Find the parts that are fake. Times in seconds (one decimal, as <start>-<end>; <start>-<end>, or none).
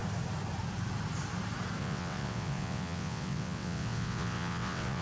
1.8-5.0